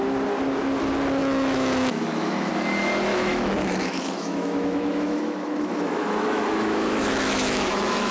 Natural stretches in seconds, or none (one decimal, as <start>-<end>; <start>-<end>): 0.0-1.2; 2.5-3.1